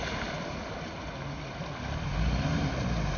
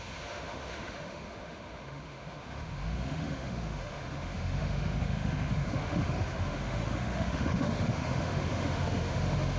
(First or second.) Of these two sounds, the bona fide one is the first